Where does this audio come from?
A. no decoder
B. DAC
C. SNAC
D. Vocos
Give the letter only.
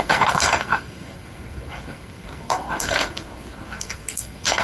C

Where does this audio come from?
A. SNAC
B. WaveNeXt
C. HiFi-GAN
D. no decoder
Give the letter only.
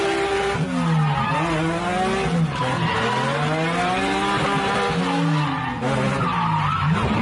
D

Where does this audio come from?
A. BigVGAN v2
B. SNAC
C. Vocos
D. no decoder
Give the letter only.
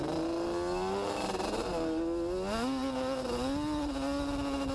D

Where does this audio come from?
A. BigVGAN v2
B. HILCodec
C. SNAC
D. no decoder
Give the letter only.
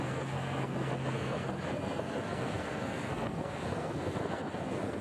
C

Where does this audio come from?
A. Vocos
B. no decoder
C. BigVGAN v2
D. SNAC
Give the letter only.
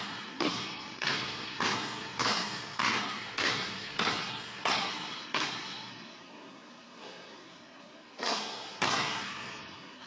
D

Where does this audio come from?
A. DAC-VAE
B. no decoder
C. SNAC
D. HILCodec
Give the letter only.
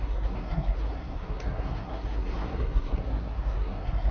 C